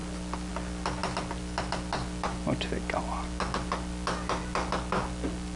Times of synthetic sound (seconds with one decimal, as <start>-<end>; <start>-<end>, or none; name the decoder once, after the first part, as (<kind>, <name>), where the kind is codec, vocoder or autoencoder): none